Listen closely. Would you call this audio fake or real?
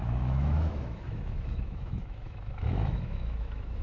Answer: fake